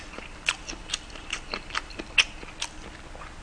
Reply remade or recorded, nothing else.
recorded